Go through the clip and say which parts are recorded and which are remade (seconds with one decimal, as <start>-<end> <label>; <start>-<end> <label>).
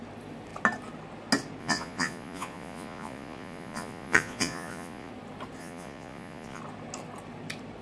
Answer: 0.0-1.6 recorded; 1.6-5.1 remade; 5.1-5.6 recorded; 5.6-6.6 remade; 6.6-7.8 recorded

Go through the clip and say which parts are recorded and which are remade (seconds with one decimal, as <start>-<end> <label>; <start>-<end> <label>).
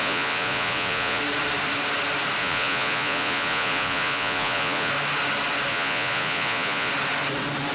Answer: 0.0-1.2 remade; 1.2-2.4 recorded; 2.4-4.9 remade; 4.9-5.7 recorded; 5.7-6.9 remade; 6.9-7.7 recorded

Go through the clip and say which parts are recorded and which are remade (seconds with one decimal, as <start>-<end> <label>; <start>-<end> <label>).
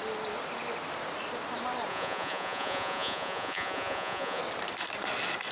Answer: 0.0-1.9 recorded; 1.9-4.4 remade; 4.4-5.5 recorded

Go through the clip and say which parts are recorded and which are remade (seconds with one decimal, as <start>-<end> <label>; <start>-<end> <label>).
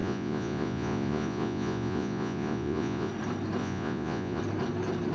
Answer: 0.0-3.1 remade; 3.1-3.6 recorded; 3.6-4.4 remade; 4.4-5.1 recorded